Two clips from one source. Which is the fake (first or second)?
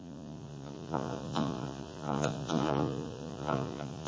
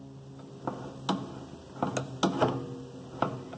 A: first